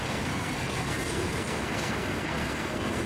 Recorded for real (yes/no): no